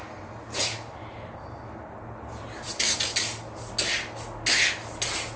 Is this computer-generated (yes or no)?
no